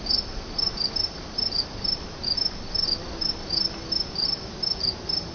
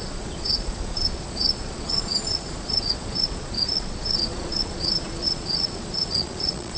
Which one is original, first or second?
first